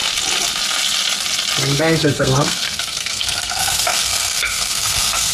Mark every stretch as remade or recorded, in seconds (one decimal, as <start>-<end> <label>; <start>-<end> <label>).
0.0-1.6 recorded; 1.6-5.3 remade